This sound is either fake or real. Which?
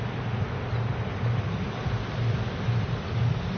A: real